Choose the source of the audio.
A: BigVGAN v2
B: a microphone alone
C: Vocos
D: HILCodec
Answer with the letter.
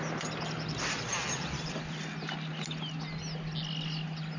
B